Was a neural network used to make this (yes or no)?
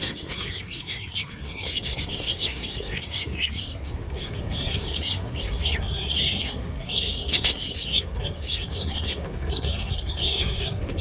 yes